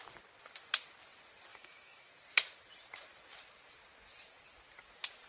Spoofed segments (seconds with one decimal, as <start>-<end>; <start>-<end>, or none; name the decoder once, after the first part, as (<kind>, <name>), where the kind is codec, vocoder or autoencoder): 1.5-2.1 (autoencoder, DAC-VAE)